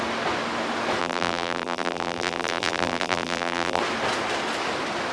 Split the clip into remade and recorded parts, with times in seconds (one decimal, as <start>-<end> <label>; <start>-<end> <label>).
0.0-1.0 recorded; 1.0-3.8 remade; 3.8-5.1 recorded